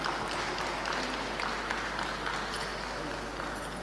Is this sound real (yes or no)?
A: yes